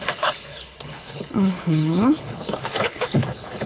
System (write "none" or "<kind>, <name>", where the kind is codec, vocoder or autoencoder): codec, HILCodec